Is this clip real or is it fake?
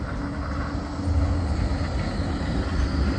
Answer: real